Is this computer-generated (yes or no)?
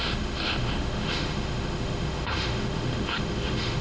yes